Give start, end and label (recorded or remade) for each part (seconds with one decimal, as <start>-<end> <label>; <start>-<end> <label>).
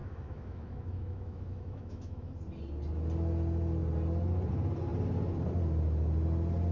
0.0-2.3 remade; 2.3-6.7 recorded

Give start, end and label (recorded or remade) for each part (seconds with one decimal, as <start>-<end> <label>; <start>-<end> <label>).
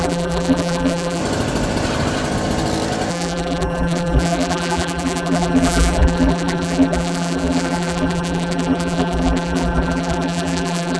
0.0-1.2 remade; 1.2-3.1 recorded; 3.1-11.0 remade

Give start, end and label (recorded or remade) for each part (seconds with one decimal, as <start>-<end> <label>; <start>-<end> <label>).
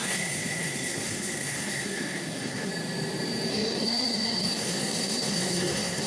0.0-2.7 remade; 2.7-3.5 recorded; 3.5-6.1 remade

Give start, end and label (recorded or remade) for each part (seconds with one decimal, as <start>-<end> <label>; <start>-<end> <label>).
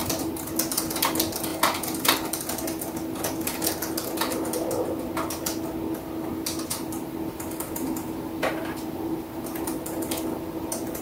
0.0-0.5 remade; 0.5-6.3 recorded; 6.3-11.0 remade